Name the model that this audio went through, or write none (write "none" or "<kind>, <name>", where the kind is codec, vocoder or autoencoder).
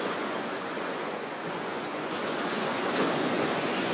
vocoder, Vocos